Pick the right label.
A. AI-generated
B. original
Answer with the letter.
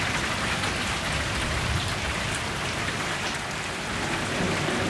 B